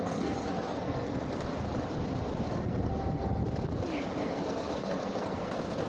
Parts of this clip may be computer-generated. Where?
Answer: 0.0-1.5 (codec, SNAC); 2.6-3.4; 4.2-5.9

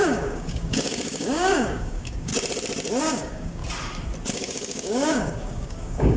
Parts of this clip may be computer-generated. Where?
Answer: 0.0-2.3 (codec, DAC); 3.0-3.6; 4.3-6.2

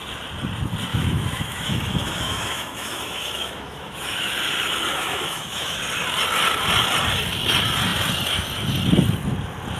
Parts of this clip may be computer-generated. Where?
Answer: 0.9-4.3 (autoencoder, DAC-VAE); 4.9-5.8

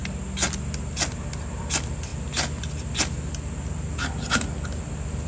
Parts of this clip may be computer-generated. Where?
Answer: none